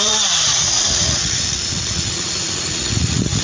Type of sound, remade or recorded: remade